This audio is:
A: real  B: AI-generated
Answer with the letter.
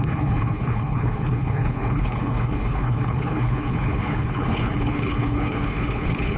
B